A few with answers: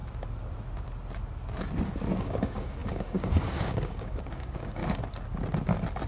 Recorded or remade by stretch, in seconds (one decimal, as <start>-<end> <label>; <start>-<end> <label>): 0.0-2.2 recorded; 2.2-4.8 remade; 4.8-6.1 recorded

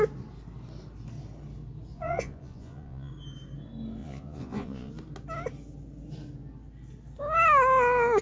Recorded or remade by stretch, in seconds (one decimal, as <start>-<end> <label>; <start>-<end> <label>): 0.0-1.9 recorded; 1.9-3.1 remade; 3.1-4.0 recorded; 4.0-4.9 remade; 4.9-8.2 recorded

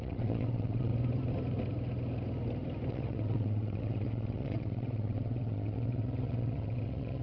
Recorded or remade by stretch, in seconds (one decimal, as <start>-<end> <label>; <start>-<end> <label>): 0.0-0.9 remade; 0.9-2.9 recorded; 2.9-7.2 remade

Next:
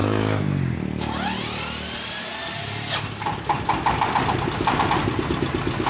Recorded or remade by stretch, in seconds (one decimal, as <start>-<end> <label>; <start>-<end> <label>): 0.0-0.6 remade; 0.6-5.9 recorded